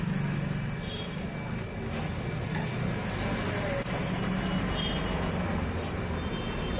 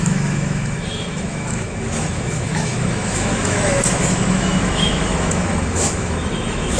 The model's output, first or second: second